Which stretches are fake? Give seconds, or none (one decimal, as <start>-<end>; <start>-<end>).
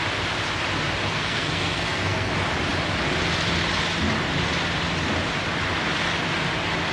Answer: 1.1-2.3